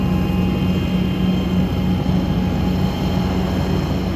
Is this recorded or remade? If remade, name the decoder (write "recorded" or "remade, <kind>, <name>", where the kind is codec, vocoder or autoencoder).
recorded